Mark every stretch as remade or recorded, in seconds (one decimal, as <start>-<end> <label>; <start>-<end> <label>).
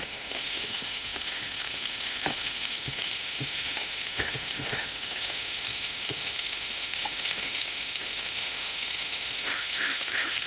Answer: 0.0-10.5 remade